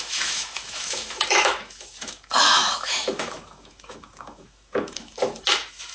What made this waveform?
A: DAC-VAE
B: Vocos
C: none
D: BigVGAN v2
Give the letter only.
A